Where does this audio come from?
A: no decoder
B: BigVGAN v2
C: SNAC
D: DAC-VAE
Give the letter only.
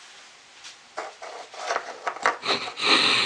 A